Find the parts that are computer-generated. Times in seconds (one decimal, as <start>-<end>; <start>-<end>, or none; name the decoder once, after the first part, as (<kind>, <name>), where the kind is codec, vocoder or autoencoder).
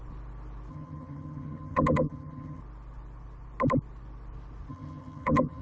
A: 0.7-2.6 (vocoder, HiFi-GAN); 4.7-5.6